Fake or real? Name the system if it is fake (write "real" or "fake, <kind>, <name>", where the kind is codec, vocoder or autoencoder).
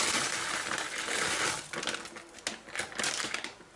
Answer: real